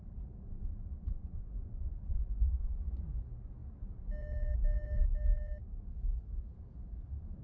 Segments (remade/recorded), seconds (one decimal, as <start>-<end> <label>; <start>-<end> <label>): 0.0-0.5 recorded; 0.5-3.1 remade; 3.1-7.4 recorded